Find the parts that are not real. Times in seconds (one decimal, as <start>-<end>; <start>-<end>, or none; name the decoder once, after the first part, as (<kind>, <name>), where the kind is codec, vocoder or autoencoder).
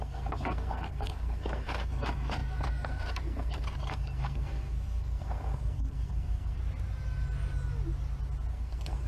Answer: 0.0-6.6 (codec, SNAC); 8.5-9.1